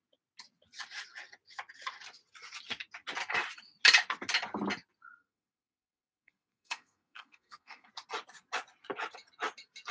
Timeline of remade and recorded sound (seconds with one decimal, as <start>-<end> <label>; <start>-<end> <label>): 0.0-5.2 recorded; 5.2-7.9 remade; 7.9-9.9 recorded